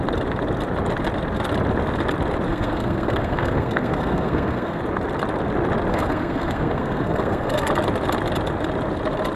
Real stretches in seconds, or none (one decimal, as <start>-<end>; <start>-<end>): 0.0-2.5; 4.8-5.9; 7.7-9.4